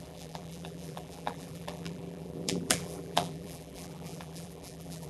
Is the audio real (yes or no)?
no